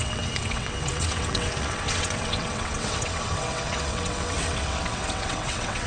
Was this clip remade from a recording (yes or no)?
yes